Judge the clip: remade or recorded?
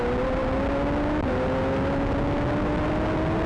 recorded